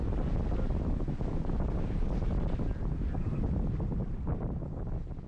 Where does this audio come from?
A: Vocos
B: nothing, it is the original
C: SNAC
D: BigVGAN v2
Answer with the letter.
B